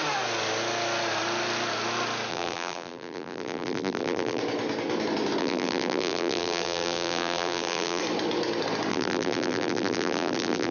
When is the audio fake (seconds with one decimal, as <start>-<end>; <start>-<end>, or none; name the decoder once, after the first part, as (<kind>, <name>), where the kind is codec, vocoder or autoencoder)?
2.3-4.4 (vocoder, BigVGAN v2); 5.4-8.0; 8.9-10.7